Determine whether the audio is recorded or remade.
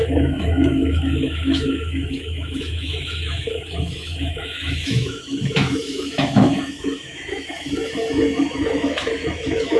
remade